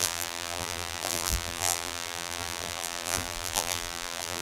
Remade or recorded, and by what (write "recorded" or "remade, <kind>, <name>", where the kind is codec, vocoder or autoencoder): remade, vocoder, BigVGAN v2